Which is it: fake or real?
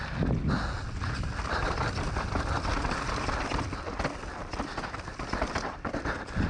real